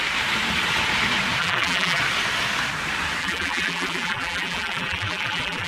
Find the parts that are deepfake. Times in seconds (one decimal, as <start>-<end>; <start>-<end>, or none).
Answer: 1.4-2.0; 3.2-5.7